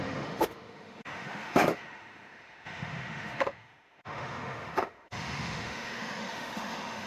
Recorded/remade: remade